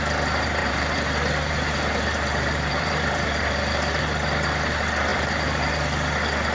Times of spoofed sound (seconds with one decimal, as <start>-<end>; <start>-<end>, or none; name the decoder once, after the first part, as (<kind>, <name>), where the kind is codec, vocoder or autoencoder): 0.6-4.0 (vocoder, BigVGAN v2); 5.1-5.7